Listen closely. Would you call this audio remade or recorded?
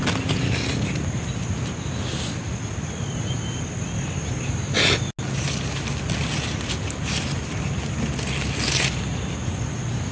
recorded